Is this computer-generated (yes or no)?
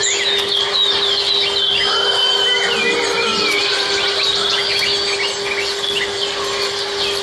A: no